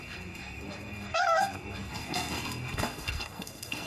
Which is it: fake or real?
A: fake